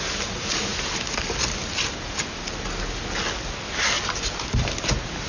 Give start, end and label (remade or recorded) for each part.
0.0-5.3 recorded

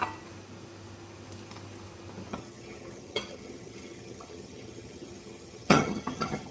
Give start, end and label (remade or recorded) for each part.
0.0-2.3 recorded; 2.3-6.5 remade